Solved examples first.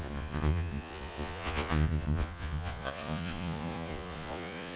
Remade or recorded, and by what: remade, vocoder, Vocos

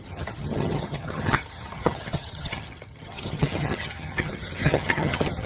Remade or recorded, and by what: remade, vocoder, HiFi-GAN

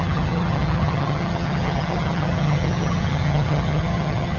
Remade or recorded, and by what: remade, vocoder, HiFi-GAN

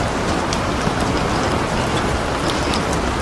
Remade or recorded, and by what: recorded